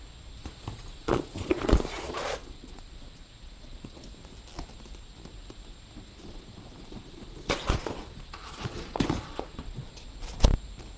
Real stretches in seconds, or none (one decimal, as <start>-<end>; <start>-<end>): 0.0-0.4; 4.0-6.1; 9.9-11.0